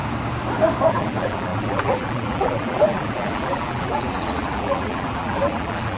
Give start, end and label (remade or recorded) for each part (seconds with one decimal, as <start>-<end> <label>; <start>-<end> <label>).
0.0-0.9 recorded; 0.9-6.0 remade